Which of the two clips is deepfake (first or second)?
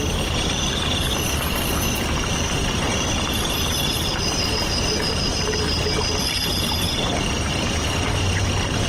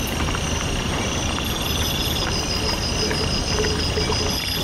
first